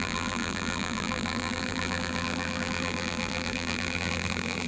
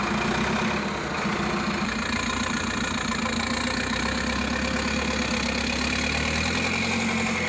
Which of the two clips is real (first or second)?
second